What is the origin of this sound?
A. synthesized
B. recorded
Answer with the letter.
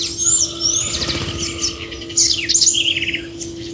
B